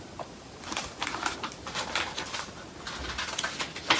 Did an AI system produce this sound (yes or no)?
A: no